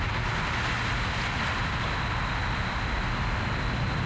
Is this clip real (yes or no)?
yes